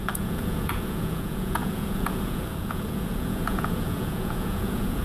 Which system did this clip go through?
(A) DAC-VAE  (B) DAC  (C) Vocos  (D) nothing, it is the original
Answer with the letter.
C